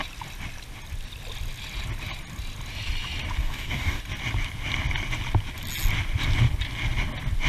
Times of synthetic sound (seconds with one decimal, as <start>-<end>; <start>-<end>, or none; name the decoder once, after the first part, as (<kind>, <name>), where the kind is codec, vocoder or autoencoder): 3.4-4.0 (codec, DAC)